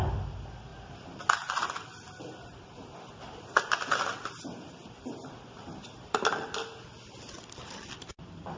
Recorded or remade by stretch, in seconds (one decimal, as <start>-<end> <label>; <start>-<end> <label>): 0.0-8.6 recorded